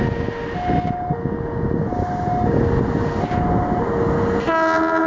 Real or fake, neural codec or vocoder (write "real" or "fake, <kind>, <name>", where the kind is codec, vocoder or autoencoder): real